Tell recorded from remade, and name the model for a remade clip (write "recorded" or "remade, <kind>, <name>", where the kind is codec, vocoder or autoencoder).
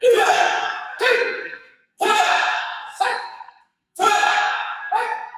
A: remade, codec, SNAC